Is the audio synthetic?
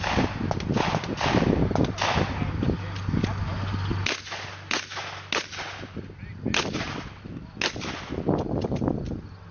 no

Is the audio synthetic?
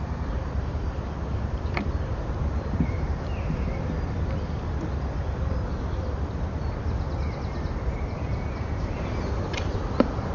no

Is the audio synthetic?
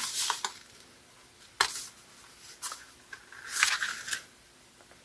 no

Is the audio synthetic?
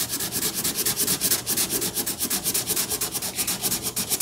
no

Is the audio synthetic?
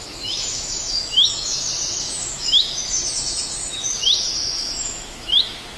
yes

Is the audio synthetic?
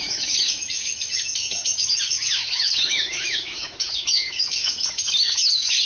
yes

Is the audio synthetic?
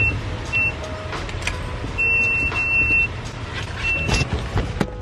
no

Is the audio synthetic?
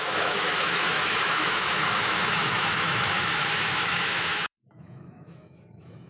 yes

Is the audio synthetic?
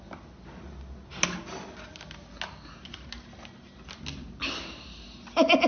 no